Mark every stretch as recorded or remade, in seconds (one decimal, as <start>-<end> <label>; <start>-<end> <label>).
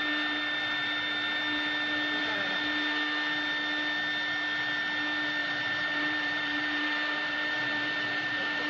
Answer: 0.0-2.2 recorded; 2.2-2.7 remade; 2.7-5.4 recorded; 5.4-8.7 remade